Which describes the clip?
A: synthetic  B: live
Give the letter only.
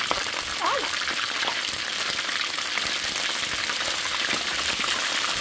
B